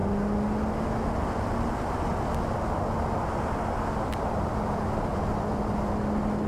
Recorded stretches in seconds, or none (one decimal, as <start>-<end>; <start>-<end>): 0.0-3.9; 5.1-6.5